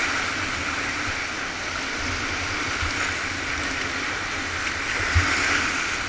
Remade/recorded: recorded